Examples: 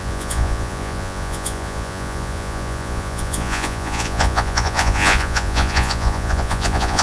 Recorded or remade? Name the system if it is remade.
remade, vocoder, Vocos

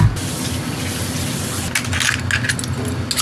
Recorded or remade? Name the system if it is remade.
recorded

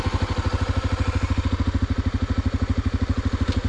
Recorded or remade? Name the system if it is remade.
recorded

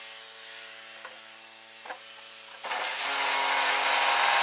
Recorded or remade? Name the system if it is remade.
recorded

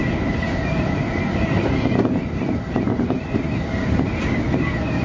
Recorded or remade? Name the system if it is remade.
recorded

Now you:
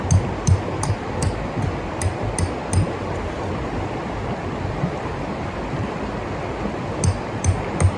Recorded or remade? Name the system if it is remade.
recorded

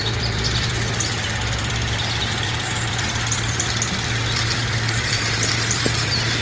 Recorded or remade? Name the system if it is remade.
remade, vocoder, BigVGAN v2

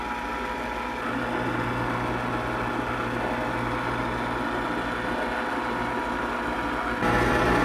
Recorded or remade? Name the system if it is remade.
recorded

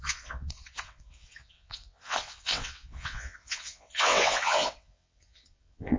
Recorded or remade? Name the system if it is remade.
remade, vocoder, WaveNeXt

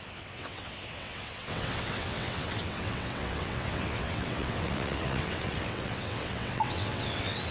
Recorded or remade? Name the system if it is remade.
remade, vocoder, WaveNeXt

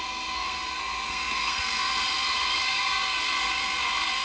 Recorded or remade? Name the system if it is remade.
remade, codec, SNAC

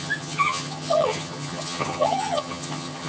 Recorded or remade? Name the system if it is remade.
remade, vocoder, HiFi-GAN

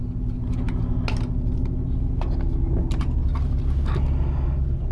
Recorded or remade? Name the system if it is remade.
recorded